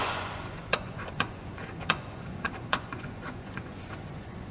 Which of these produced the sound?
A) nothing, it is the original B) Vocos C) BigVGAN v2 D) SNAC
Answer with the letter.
B